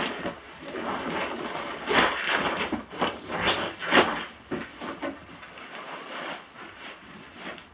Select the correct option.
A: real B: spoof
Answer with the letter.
A